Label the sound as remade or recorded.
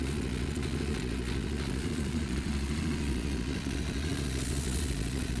remade